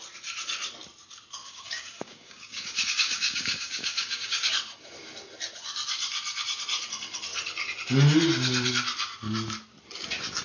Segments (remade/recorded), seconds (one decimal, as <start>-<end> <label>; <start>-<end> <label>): 0.0-1.4 recorded; 1.4-4.5 remade; 4.5-10.4 recorded